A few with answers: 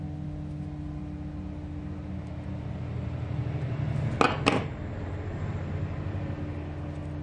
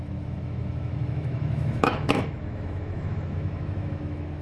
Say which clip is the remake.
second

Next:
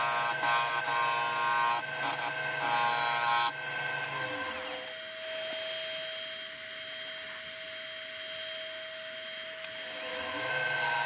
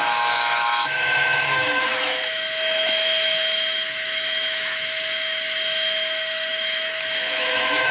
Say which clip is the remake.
second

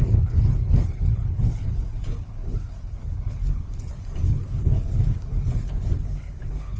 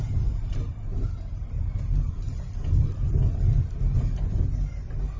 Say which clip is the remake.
first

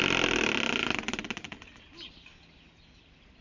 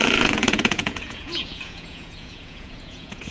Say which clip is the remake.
second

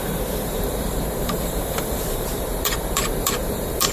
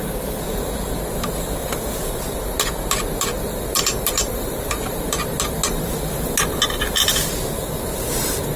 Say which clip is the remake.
first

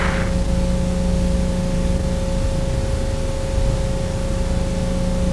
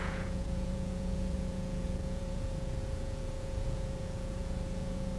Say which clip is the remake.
second